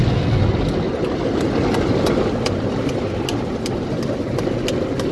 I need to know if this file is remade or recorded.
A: recorded